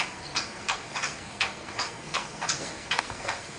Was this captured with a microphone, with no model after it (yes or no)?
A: no